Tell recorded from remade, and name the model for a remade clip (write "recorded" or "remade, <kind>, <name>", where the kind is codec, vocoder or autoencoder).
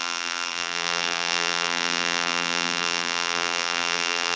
remade, vocoder, BigVGAN v2